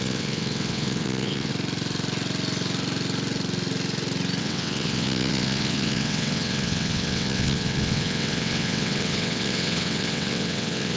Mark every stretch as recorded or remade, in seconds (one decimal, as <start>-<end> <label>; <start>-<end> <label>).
0.0-1.5 remade; 1.5-4.4 recorded; 4.4-11.0 remade